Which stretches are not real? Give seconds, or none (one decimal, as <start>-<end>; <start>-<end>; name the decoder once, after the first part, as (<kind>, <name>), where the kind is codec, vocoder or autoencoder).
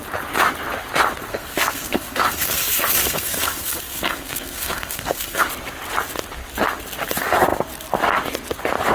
1.3-5.5 (codec, SNAC)